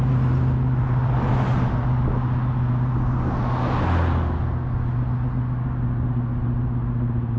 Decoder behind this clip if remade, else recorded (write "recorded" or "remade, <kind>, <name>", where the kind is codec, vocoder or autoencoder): recorded